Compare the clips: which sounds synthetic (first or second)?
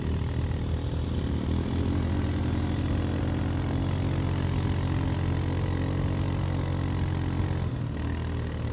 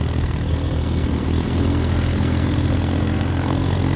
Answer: second